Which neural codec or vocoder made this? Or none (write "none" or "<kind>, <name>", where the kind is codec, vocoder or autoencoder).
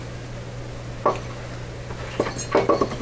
none